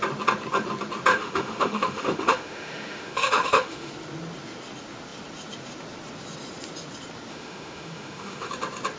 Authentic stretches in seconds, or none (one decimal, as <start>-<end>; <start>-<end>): 0.0-1.1; 3.9-7.3; 8.5-9.0